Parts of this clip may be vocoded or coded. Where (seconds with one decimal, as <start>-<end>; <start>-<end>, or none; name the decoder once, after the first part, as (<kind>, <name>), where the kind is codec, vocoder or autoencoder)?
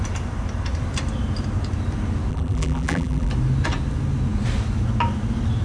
2.3-3.3 (vocoder, BigVGAN v2)